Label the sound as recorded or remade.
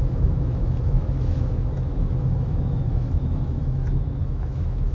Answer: remade